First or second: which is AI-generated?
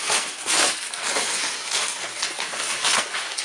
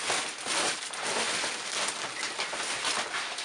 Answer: first